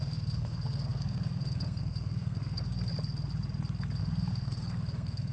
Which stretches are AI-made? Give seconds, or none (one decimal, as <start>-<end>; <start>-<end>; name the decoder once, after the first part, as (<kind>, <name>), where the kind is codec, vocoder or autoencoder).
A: 0.0-2.9 (codec, SNAC); 4.0-5.3